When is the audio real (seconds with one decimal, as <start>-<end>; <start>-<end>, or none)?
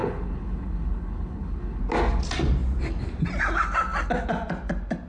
1.8-5.1